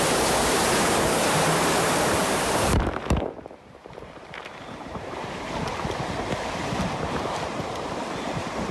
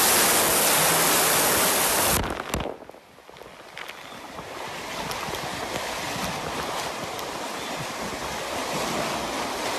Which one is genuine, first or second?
second